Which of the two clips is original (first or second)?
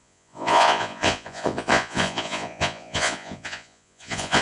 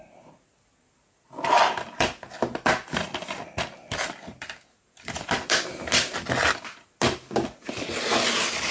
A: second